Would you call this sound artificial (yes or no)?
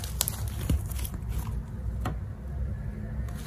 no